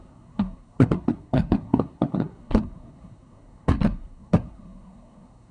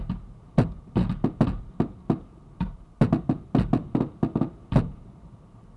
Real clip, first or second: second